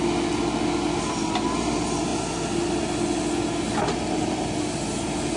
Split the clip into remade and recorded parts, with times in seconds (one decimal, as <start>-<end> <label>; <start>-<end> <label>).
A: 0.0-5.4 recorded